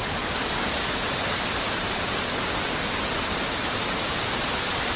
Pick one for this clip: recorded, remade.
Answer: recorded